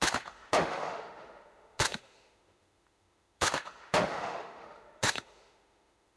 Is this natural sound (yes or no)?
no